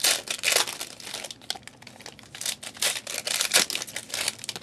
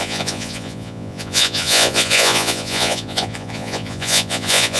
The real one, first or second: first